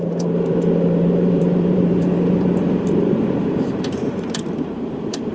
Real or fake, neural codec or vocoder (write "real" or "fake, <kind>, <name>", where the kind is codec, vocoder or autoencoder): fake, vocoder, BigVGAN v2